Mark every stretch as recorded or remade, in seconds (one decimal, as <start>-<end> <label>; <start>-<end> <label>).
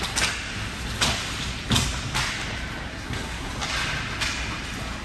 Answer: 0.0-2.9 recorded; 2.9-3.5 remade; 3.5-5.0 recorded